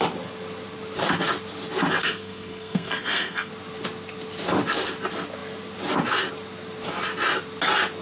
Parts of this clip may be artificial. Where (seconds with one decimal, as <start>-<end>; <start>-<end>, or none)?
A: 2.0-3.5